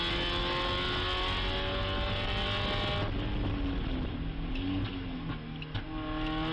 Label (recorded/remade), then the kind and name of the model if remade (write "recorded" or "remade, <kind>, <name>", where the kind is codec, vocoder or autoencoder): recorded